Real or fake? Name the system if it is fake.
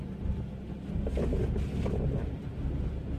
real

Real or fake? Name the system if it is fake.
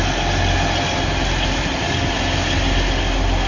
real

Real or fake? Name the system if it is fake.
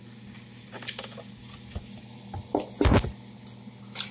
real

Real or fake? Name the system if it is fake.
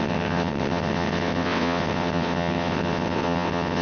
fake, vocoder, WaveNeXt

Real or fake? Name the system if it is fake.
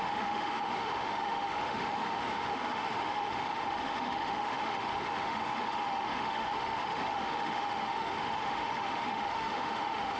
fake, autoencoder, DAC-VAE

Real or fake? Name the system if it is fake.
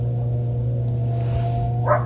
real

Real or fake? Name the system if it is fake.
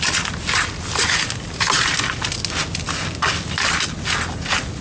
real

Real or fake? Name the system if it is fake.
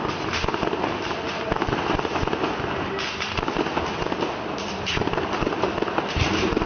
real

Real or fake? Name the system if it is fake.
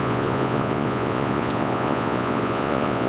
fake, vocoder, Vocos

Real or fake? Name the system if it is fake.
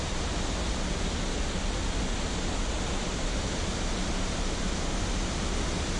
real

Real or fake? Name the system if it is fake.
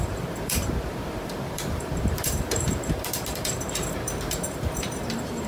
fake, vocoder, BigVGAN v2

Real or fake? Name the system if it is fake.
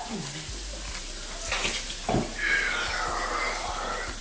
real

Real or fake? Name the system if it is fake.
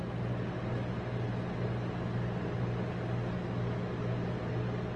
real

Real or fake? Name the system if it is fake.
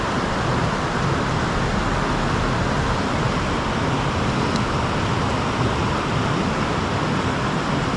real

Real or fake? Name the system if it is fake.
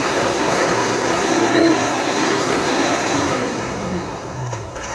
fake, codec, SNAC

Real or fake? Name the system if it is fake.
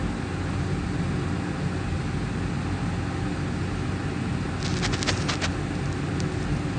real